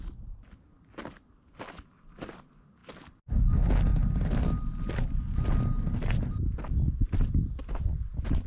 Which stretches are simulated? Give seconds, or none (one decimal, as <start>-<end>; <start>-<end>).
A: 3.9-5.2

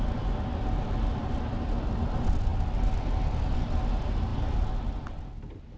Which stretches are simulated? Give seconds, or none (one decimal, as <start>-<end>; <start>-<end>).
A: none

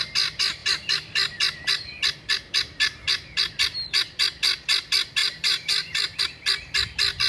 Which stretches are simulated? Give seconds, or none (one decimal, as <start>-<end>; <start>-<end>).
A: 5.2-6.2

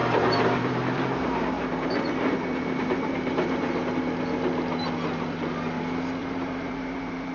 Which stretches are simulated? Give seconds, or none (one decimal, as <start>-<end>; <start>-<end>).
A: 0.0-3.9; 6.2-7.3

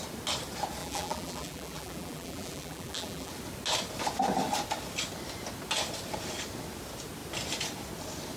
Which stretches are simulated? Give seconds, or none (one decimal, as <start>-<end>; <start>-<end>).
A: 0.8-3.3

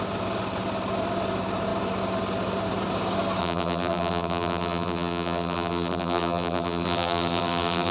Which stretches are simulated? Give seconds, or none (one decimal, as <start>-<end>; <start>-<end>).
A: 3.4-7.9